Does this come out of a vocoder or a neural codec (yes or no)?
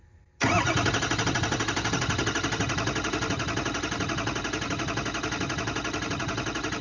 no